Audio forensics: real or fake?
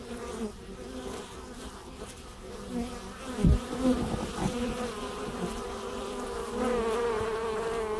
real